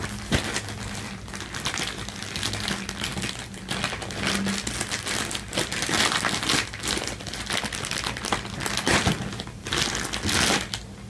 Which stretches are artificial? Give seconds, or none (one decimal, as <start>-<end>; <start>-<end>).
none